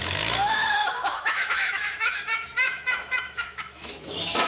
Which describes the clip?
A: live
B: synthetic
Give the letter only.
B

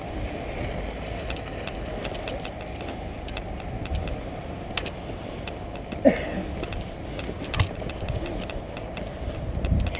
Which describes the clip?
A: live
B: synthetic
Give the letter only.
A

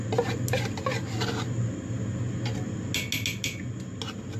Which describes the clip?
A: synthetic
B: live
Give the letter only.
B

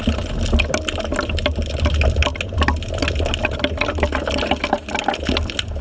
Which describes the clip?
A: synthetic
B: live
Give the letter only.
B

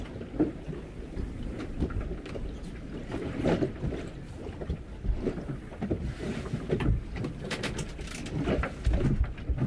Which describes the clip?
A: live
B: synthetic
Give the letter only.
A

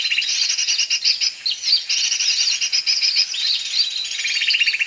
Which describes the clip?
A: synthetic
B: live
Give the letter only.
B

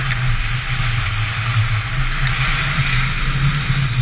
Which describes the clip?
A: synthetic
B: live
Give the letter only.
B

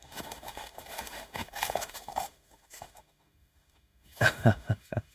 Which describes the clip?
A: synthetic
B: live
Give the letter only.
A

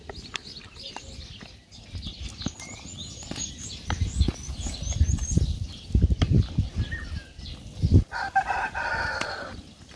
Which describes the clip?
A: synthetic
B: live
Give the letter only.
B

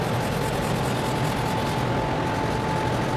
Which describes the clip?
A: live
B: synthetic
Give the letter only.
A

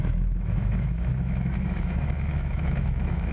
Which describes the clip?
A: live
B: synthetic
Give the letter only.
B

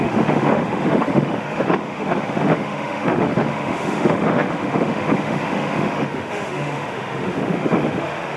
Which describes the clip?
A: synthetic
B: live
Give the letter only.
A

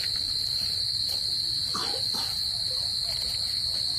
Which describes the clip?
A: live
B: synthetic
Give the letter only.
A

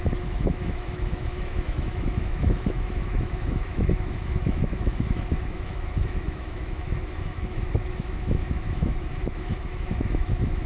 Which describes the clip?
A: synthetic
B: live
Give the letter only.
A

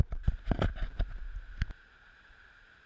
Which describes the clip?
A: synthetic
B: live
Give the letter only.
B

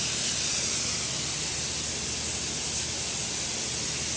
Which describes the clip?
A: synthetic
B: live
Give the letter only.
B